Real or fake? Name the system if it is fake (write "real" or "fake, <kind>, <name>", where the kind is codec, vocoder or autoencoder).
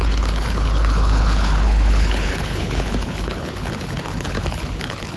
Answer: fake, codec, HILCodec